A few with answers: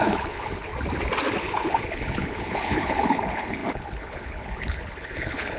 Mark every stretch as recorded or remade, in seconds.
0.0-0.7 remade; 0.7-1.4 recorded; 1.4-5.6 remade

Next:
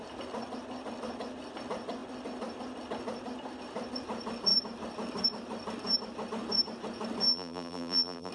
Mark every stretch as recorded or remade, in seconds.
0.0-7.3 recorded; 7.3-8.3 remade